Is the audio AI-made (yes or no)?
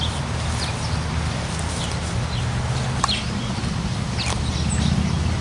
no